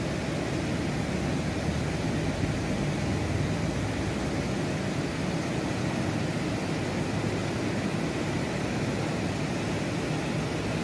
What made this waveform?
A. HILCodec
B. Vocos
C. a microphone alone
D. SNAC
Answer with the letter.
C